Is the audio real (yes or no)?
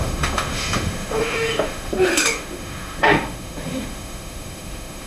no